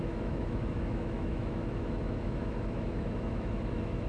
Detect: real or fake fake